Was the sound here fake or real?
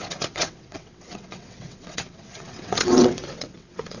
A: fake